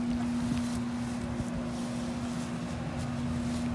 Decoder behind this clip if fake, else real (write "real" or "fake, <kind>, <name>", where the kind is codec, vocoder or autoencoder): real